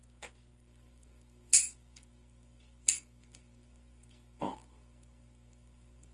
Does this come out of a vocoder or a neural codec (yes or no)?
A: yes